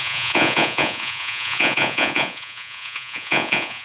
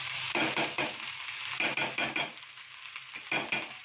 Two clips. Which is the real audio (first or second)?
second